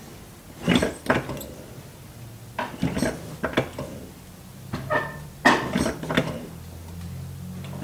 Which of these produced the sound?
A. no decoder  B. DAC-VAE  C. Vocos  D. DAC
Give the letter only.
A